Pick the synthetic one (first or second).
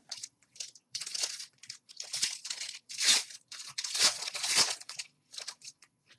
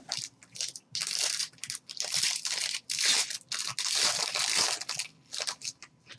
first